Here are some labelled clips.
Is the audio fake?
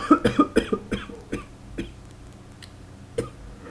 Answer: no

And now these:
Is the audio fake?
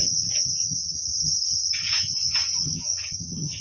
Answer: yes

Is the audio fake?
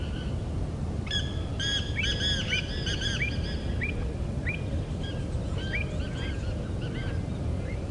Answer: no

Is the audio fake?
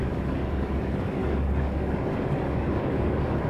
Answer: yes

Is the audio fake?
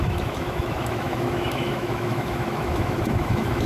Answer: yes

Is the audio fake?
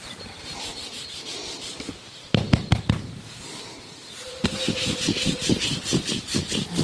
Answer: no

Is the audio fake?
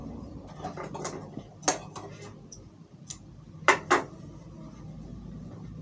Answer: no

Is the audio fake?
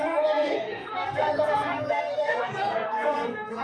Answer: yes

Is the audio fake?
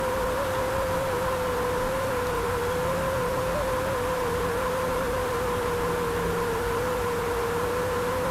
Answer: no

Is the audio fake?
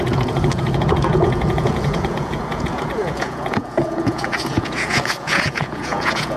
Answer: yes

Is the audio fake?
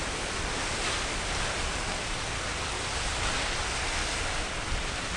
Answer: no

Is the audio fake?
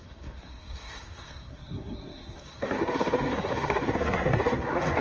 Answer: yes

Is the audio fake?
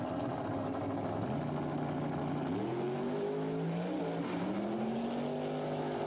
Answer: no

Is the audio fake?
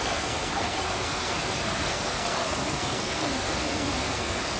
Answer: yes